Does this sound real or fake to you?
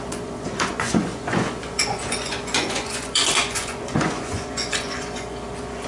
fake